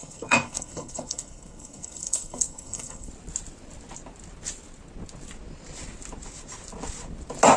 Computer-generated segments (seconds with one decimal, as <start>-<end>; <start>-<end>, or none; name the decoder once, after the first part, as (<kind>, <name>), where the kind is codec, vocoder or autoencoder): 0.0-3.1 (codec, SNAC)